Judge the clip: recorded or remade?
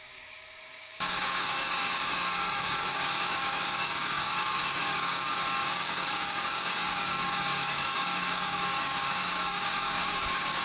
remade